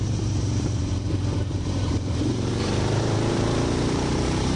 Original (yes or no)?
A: no